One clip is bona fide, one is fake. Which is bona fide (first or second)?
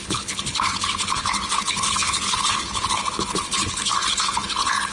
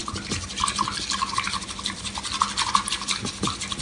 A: second